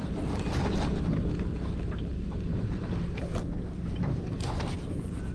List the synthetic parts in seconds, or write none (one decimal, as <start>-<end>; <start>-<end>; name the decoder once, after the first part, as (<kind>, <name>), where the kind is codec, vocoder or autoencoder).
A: none